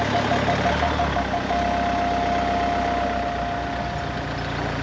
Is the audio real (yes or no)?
yes